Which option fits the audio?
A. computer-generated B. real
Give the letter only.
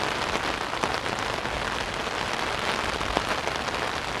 B